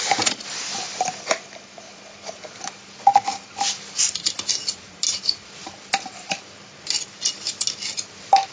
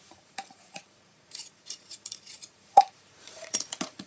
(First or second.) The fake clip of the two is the second